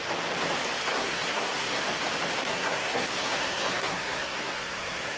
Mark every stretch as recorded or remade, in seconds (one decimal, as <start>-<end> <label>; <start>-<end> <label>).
0.0-0.9 recorded; 0.9-1.8 remade; 1.8-2.4 recorded; 2.4-5.2 remade